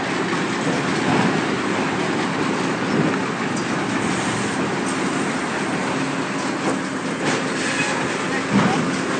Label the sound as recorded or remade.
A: recorded